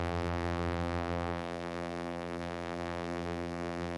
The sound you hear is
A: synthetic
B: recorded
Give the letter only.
A